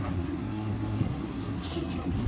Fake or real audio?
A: fake